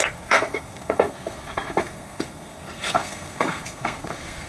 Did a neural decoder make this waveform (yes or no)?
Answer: yes